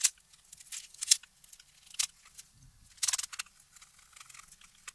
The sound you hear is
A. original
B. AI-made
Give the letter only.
A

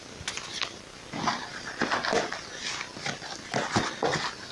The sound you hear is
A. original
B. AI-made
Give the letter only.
A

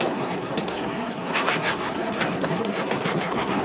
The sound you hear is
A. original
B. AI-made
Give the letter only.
B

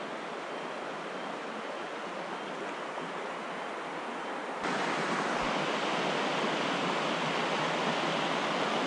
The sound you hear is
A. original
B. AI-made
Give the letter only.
A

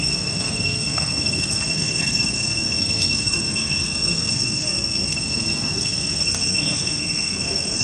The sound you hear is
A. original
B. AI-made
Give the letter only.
B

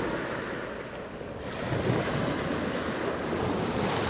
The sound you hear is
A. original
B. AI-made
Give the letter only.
A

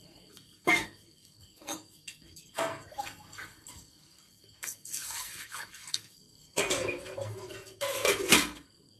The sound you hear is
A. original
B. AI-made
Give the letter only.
B